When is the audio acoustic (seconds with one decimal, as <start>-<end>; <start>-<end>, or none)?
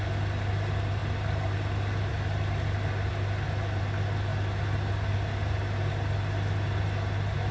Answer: 0.0-7.5